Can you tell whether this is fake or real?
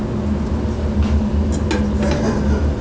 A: real